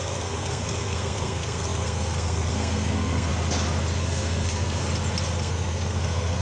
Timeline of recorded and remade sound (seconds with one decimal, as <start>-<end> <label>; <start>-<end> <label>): 0.0-3.3 remade; 3.3-4.0 recorded; 4.0-4.9 remade; 4.9-5.4 recorded; 5.4-6.4 remade